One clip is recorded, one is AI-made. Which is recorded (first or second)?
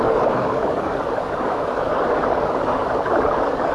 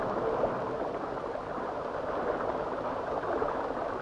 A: second